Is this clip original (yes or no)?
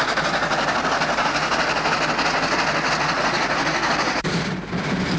yes